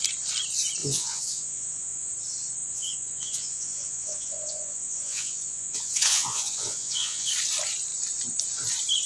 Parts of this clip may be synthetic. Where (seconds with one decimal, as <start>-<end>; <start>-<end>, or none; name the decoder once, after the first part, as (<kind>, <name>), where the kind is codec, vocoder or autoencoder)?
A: 0.8-2.1 (vocoder, Vocos); 2.6-7.3